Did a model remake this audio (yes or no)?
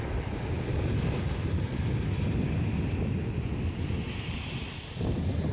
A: no